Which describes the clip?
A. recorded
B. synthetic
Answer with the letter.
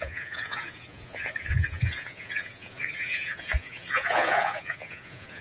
B